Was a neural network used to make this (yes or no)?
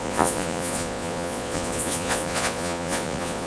yes